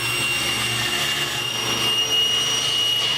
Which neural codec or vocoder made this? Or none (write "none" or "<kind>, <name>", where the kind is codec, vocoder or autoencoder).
none